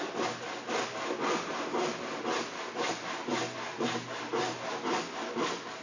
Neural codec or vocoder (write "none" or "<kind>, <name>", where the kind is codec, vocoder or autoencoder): none